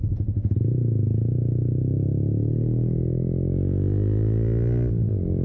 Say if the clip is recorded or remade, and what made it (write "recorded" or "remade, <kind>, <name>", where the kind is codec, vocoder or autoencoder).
recorded